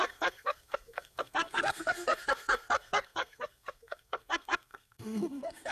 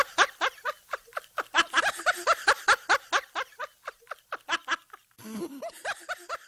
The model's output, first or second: first